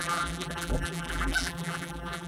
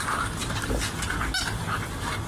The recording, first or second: second